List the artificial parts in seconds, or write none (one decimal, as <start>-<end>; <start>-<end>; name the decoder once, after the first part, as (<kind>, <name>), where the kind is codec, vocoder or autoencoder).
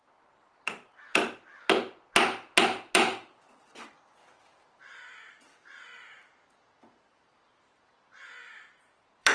0.0-1.5 (vocoder, BigVGAN v2); 3.6-9.3